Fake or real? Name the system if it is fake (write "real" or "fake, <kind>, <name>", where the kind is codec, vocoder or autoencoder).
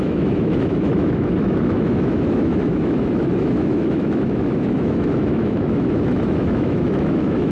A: fake, autoencoder, DAC-VAE